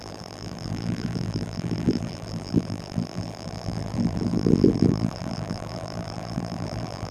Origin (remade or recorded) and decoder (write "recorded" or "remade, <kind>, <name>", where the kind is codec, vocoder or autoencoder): remade, vocoder, BigVGAN v2